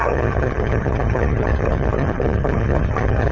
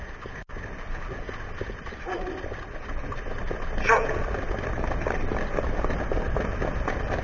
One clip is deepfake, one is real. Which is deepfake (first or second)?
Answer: first